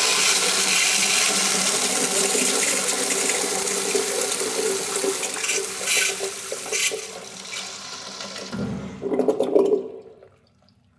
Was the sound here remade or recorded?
recorded